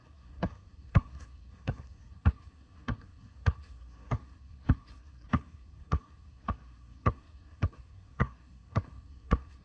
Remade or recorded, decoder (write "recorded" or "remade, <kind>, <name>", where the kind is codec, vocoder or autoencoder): remade, codec, SNAC